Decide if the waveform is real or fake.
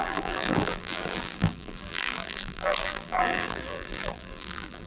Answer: fake